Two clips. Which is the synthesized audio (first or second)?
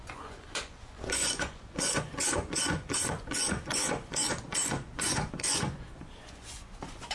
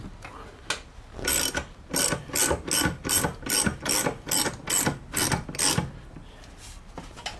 first